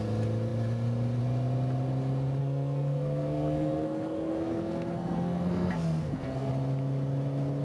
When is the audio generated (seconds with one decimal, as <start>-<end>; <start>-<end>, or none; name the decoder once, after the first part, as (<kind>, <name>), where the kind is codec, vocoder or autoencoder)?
2.4-6.5 (codec, SNAC)